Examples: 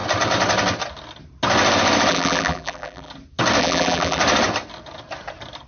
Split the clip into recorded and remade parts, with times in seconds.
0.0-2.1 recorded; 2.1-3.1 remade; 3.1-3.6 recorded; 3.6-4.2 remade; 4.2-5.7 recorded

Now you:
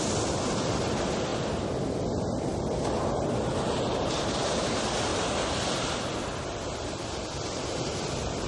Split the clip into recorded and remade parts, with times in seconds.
0.0-5.1 recorded; 5.1-8.0 remade; 8.0-8.5 recorded

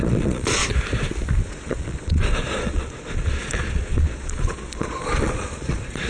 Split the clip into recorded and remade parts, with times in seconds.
0.0-0.6 remade; 0.6-1.4 recorded; 1.4-6.1 remade

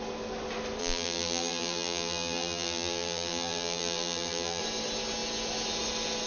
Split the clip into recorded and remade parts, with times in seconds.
0.0-0.8 recorded; 0.8-4.6 remade; 4.6-6.3 recorded

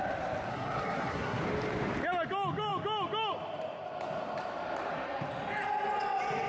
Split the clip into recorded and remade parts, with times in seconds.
0.0-0.5 recorded; 0.5-1.4 remade; 1.4-6.5 recorded

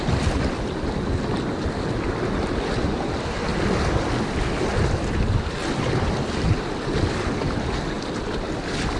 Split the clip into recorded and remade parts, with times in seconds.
0.0-9.0 recorded